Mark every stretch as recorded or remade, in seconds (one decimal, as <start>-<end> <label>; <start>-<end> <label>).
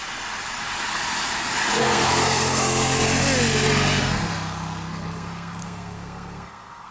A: 0.0-1.8 recorded; 1.8-3.0 remade; 3.0-4.0 recorded; 4.0-6.9 remade